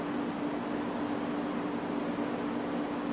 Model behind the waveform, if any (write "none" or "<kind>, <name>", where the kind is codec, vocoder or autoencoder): none